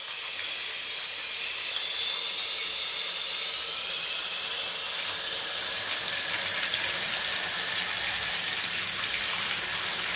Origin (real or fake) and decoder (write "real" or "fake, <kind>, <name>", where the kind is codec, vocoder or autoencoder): real